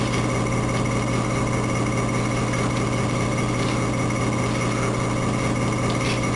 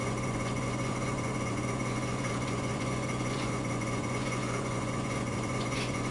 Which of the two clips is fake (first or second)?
second